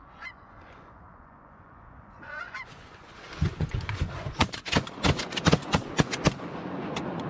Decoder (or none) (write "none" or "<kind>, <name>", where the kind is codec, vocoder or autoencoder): vocoder, Vocos